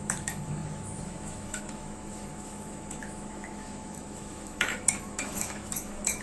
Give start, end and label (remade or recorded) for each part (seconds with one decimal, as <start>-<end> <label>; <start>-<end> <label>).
0.0-6.2 remade